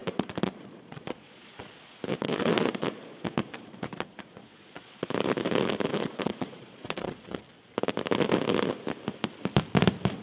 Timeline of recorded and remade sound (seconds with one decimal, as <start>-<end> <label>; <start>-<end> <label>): 0.0-1.6 remade; 1.6-2.1 recorded; 2.1-5.1 remade; 5.1-5.9 recorded; 5.9-7.4 remade; 7.4-10.2 recorded